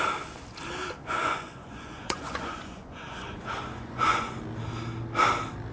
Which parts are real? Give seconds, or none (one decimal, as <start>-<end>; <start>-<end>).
0.0-1.0; 4.4-5.7